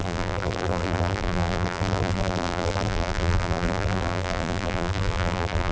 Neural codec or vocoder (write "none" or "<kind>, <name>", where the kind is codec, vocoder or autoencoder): vocoder, BigVGAN v2